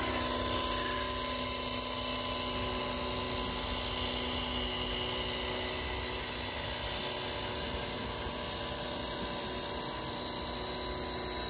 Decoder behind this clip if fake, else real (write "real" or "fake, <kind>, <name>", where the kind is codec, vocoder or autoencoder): real